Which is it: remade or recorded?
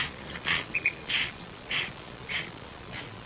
remade